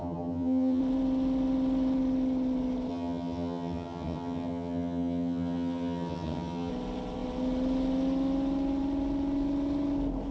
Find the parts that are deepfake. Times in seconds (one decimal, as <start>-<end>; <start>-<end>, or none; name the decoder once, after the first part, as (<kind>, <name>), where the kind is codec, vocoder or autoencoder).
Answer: 0.0-0.8 (vocoder, HiFi-GAN); 2.9-6.7